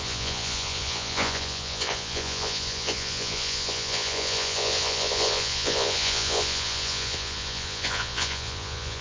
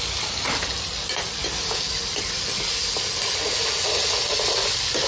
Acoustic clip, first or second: second